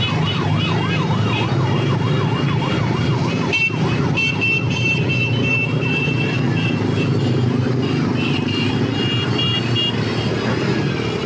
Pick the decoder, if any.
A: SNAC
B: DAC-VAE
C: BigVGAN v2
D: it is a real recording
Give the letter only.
D